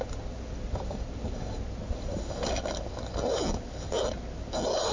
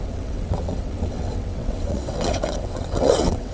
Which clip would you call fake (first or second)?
second